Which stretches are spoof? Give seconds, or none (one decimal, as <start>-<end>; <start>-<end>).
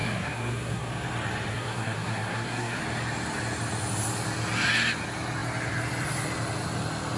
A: 0.0-0.9; 1.5-2.8